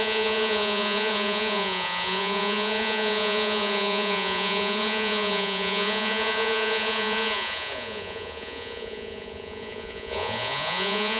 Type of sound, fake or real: fake